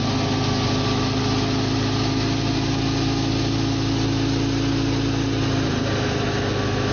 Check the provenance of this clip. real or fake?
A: real